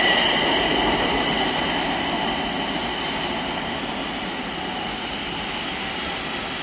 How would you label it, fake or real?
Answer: real